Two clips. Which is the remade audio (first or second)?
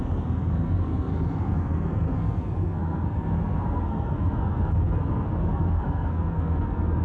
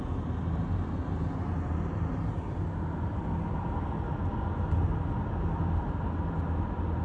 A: first